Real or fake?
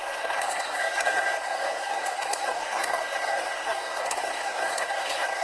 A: fake